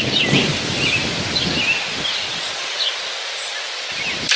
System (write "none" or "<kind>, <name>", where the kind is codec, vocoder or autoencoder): none